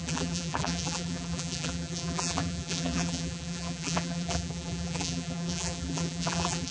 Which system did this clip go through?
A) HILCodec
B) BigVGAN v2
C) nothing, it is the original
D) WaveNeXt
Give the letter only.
B